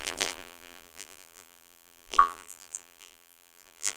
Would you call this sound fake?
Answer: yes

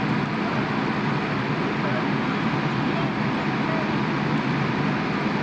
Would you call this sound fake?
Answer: no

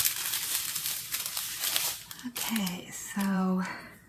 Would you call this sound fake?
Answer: yes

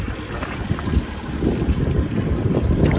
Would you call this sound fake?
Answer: yes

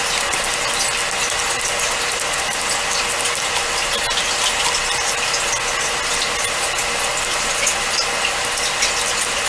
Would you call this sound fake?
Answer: no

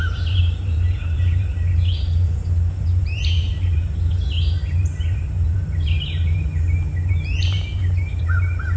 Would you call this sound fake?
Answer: yes